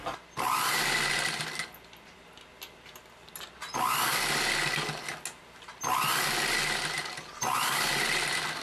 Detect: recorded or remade recorded